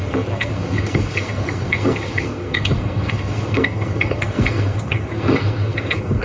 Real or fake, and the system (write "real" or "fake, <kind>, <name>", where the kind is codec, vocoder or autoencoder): fake, codec, SNAC